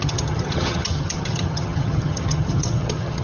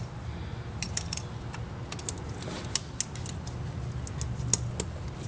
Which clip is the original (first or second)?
second